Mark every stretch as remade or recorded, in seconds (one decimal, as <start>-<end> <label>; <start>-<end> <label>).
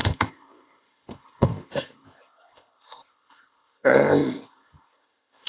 0.0-5.5 remade